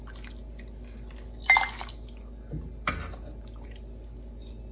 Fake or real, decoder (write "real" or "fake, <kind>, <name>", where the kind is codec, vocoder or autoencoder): real